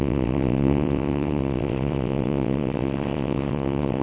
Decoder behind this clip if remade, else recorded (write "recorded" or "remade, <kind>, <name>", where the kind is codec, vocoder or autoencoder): remade, vocoder, WaveNeXt